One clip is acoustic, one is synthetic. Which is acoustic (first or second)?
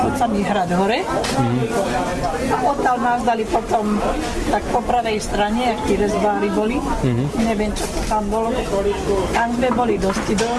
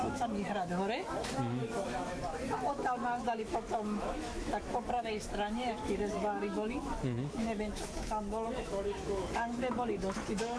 first